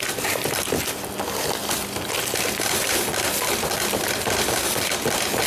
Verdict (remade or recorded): recorded